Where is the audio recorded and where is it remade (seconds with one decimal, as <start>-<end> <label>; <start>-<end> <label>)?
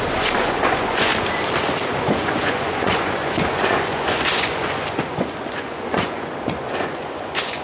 0.0-1.1 remade; 1.1-2.0 recorded; 2.0-7.6 remade